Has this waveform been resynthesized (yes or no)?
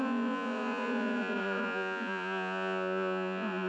yes